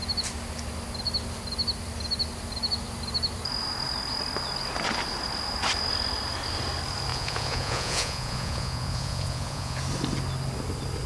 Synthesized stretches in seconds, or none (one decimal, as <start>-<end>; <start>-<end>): 7.1-9.8